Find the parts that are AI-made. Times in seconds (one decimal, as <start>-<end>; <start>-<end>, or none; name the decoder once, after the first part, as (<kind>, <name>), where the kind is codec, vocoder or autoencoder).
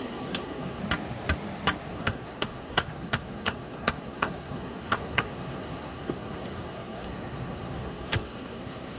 0.0-0.8 (codec, SNAC); 1.9-9.0